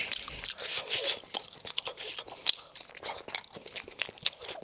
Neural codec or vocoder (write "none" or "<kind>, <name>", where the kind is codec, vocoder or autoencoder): none